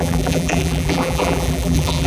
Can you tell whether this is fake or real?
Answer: fake